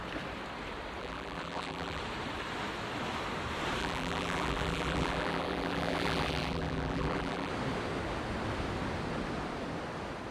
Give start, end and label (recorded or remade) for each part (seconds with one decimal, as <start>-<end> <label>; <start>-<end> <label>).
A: 0.0-1.0 recorded; 1.0-2.0 remade; 2.0-3.8 recorded; 3.8-7.5 remade; 7.5-10.3 recorded